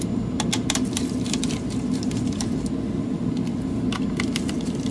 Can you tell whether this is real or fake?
real